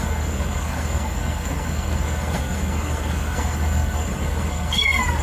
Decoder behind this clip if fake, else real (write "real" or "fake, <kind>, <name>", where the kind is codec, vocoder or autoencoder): fake, codec, SNAC